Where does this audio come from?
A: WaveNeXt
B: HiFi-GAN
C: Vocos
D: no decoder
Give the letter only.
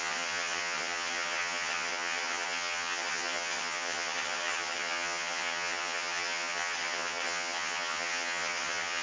B